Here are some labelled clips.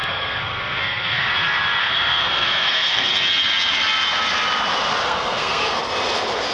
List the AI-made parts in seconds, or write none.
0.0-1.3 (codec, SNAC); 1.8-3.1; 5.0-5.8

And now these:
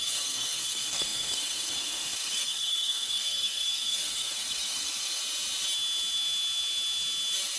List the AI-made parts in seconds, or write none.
0.0-5.2 (codec, SNAC)

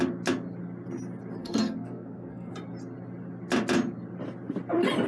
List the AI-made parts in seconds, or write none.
1.4-2.5 (codec, SNAC)

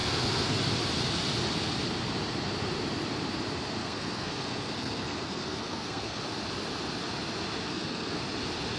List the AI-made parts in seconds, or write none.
0.0-0.6 (codec, SNAC); 3.8-6.2; 7.7-8.2

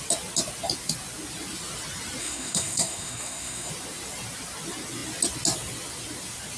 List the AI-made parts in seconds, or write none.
2.2-3.7 (codec, SNAC)

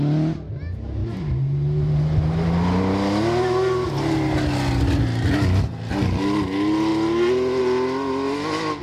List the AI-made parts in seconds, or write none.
none

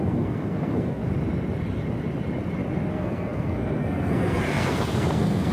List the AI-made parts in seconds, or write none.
0.0-1.0 (codec, SNAC); 2.9-5.5

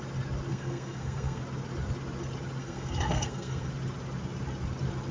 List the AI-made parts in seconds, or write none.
0.5-1.4 (codec, SNAC); 2.6-3.7